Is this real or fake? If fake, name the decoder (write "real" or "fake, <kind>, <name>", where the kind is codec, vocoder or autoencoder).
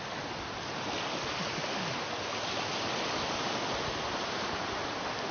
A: real